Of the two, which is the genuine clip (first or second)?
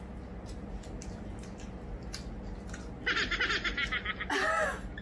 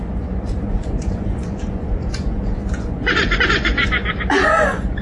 first